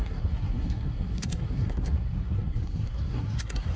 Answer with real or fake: fake